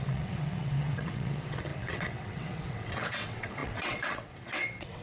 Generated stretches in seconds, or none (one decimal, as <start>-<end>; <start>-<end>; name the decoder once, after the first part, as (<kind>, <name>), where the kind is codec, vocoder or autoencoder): 0.0-5.0 (vocoder, WaveNeXt)